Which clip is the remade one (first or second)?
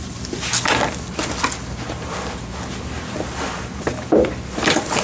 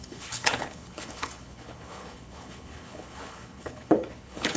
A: second